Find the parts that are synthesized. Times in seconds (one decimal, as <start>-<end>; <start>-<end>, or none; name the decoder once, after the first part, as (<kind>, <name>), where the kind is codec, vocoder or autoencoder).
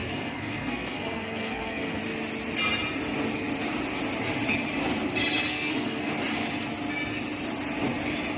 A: 0.0-2.0 (codec, SNAC); 5.5-6.1